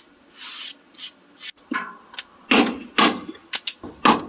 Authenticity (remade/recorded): recorded